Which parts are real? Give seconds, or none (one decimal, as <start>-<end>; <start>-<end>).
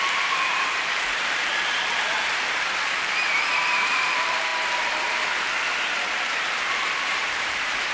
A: 2.1-3.0; 4.5-6.6